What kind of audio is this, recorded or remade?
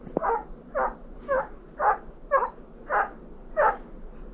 recorded